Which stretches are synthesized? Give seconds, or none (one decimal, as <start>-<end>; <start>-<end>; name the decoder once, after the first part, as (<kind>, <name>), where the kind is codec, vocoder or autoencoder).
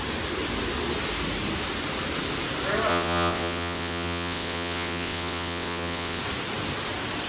2.9-6.2 (vocoder, WaveNeXt)